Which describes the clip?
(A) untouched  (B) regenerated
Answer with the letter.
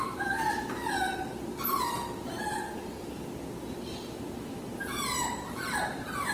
B